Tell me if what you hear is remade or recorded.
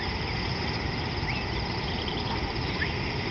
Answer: recorded